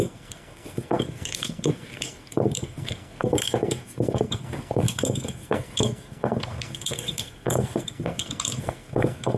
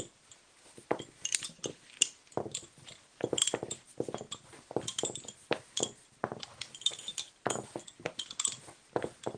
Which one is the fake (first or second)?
first